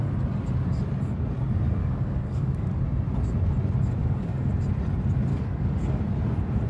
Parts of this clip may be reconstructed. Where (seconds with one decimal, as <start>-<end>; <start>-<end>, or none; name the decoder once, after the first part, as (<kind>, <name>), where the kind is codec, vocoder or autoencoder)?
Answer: 1.8-2.8 (codec, DAC); 4.0-4.5; 5.3-6.0